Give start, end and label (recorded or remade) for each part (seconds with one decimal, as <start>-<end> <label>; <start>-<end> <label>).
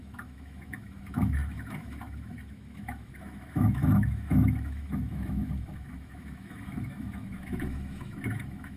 0.0-8.8 remade